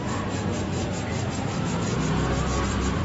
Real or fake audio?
real